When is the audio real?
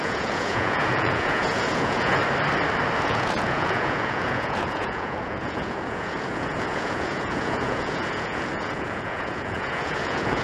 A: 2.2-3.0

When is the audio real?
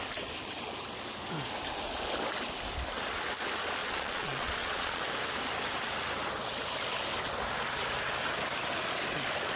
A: 0.0-3.8; 5.0-9.6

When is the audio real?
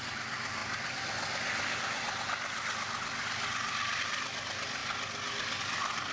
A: 0.0-6.1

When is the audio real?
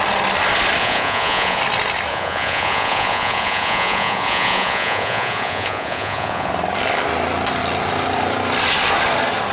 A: 0.0-0.8; 1.6-2.1; 6.5-9.5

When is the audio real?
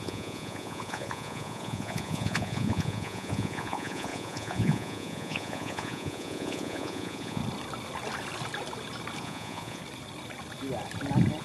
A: 7.4-9.2; 9.8-11.4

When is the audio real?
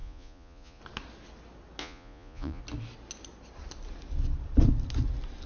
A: 0.8-1.8; 2.6-5.5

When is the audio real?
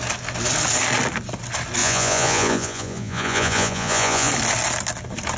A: 0.0-1.8; 4.3-5.4